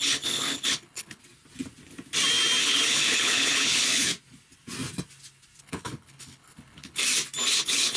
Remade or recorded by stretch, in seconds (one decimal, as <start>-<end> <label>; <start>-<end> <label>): 0.0-1.2 remade; 1.2-2.6 recorded; 2.6-4.1 remade; 4.1-5.6 recorded; 5.6-7.0 remade; 7.0-7.5 recorded; 7.5-8.0 remade

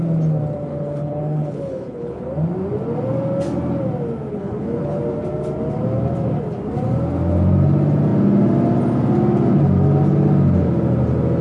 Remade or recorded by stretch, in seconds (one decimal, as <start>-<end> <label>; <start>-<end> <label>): 0.0-0.7 recorded; 0.7-2.2 remade; 2.2-4.3 recorded; 4.3-5.0 remade; 5.0-11.4 recorded